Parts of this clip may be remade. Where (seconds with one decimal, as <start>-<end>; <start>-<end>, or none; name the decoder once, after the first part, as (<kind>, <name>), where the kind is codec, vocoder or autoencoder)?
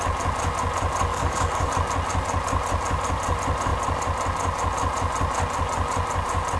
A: 1.1-1.7 (codec, DAC)